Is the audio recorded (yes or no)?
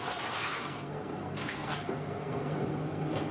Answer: no